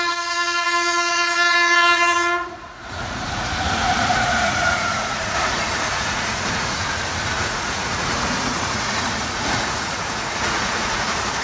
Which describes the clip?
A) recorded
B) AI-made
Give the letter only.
B